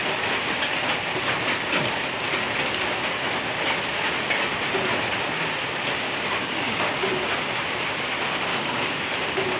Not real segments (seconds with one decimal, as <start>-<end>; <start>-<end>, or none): 6.4-6.9; 8.5-9.1

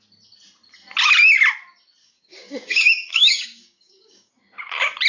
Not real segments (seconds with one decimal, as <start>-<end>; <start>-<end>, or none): 2.0-4.3

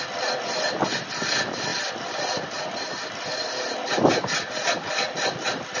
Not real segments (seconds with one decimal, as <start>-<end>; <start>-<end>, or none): none

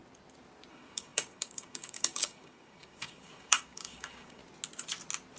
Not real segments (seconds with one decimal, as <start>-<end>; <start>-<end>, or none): 0.7-4.4

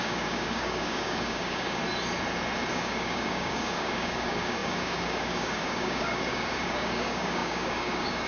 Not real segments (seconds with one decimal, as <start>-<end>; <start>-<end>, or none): 0.0-1.8; 2.7-8.3

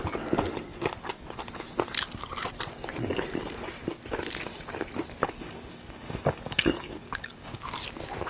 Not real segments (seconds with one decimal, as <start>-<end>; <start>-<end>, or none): 5.2-7.6

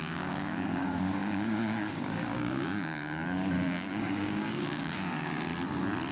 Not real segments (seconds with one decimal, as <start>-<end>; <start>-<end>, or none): 0.0-5.5